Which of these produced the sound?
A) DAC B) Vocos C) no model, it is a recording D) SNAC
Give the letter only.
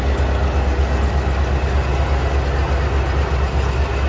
C